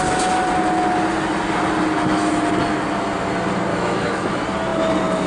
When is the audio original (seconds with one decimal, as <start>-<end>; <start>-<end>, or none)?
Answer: 0.0-3.7; 4.3-5.3